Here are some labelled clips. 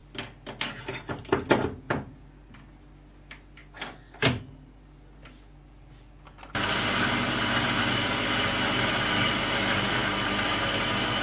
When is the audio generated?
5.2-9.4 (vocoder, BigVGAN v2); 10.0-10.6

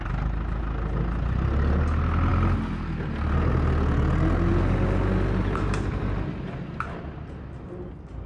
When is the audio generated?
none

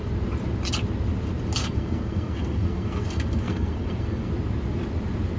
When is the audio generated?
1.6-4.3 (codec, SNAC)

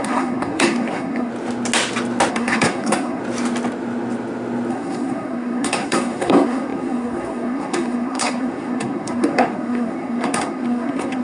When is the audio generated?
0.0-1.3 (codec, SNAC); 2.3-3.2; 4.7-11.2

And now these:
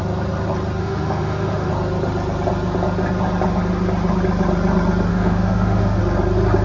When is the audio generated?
0.8-1.7 (autoencoder, DAC-VAE); 5.1-6.0

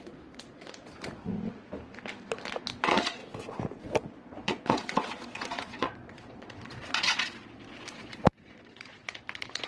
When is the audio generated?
0.0-1.3 (vocoder, Vocos); 2.8-3.2; 3.8-7.4; 7.9-9.7

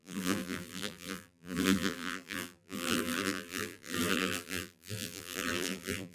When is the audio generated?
0.0-6.1 (vocoder, BigVGAN v2)